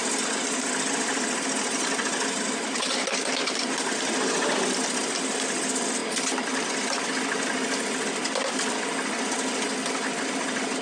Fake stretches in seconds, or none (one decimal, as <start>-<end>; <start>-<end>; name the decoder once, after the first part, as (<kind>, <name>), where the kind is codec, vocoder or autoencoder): none

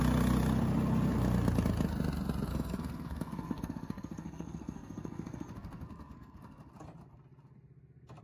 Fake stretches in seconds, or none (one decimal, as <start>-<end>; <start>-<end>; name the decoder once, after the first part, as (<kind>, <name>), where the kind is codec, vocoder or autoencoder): 2.5-6.7 (codec, SNAC)